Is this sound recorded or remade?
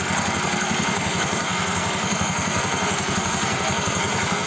remade